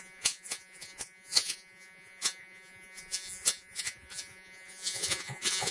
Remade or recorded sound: remade